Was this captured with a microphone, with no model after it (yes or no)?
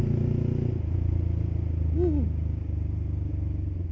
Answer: yes